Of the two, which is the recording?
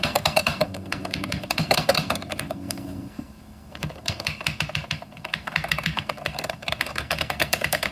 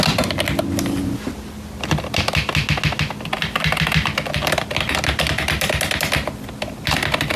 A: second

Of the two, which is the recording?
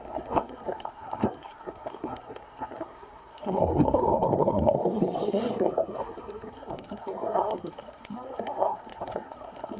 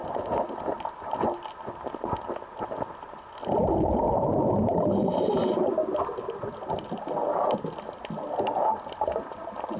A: second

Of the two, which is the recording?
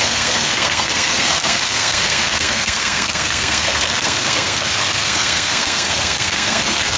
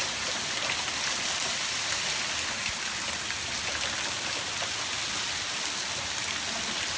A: second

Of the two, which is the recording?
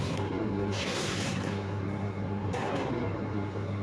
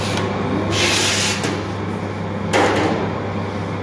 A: second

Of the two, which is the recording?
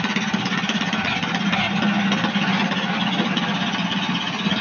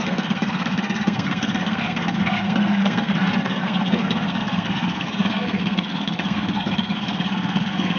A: first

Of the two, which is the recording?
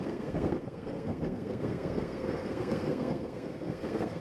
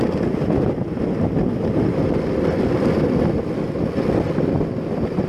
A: second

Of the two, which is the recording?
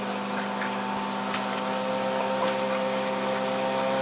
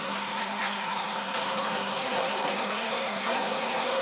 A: first